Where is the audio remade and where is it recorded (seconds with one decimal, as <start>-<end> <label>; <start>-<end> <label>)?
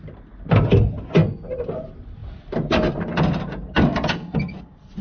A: 0.0-2.2 recorded; 2.2-4.6 remade; 4.6-5.0 recorded